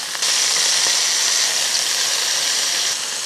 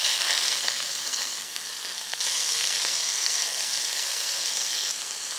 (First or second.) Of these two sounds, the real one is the first